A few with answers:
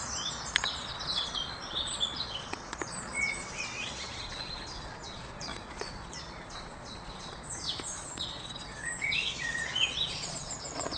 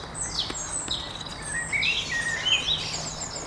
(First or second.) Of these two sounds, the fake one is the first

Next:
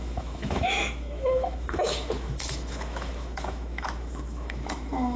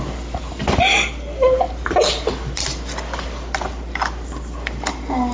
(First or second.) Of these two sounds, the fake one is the first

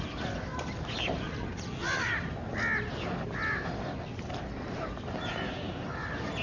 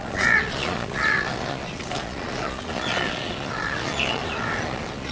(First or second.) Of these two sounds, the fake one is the second